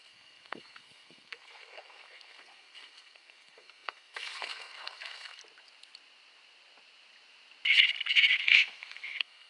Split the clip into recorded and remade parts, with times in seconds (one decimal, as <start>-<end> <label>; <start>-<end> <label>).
0.0-5.4 remade; 5.4-8.4 recorded; 8.4-9.5 remade